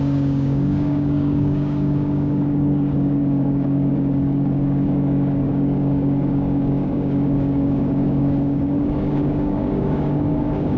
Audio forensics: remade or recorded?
remade